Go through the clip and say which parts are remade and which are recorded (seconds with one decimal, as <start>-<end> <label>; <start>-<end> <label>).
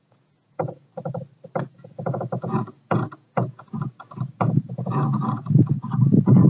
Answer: 0.0-0.9 remade; 0.9-1.6 recorded; 1.6-6.5 remade